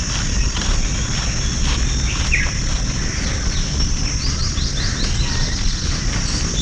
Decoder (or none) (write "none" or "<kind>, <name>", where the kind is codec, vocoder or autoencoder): none